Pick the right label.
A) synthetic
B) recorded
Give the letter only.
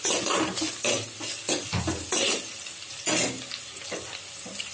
B